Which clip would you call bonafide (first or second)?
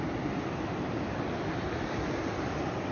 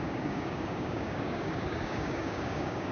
first